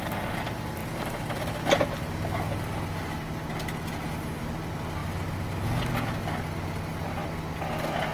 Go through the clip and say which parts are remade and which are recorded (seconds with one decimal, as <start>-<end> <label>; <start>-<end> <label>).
0.0-8.1 recorded